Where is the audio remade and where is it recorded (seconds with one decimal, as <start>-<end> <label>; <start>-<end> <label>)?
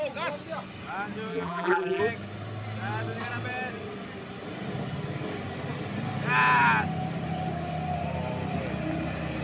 0.0-1.3 recorded; 1.3-2.0 remade; 2.0-9.4 recorded